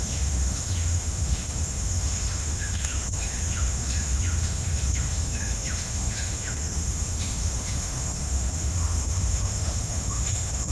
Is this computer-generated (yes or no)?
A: yes